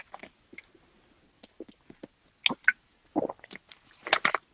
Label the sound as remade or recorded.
recorded